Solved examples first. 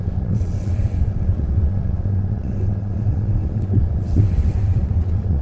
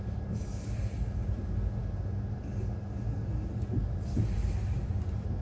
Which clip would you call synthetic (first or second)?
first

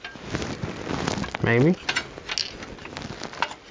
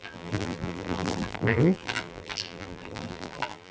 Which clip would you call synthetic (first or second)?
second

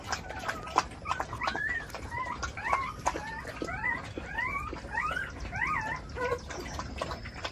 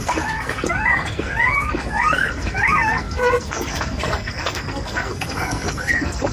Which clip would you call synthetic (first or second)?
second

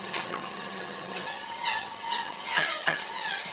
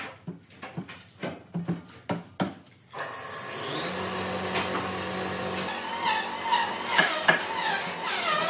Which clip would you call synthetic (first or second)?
first